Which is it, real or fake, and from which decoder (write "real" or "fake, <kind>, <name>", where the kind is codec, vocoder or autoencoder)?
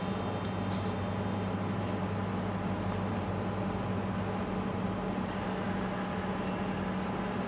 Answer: real